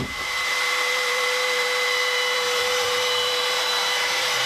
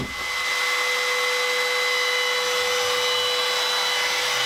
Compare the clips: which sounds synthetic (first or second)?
first